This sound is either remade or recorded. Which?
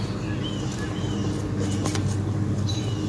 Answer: recorded